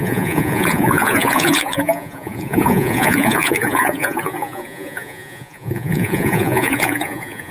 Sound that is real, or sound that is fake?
fake